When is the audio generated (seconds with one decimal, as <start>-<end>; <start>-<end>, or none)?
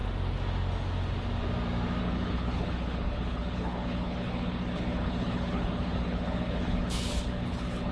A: 2.0-7.9